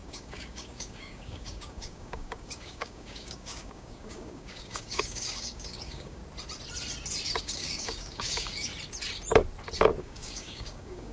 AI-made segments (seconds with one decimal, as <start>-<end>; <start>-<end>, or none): 0.0-6.2; 7.4-8.7; 10.0-11.1